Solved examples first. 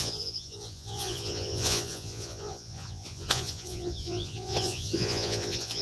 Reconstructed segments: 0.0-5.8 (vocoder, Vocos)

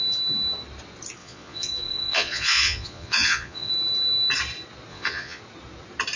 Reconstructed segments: 1.2-3.7 (vocoder, Vocos); 4.9-5.4

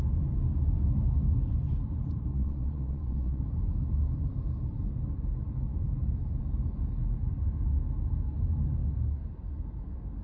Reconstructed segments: 2.3-3.4 (vocoder, Vocos)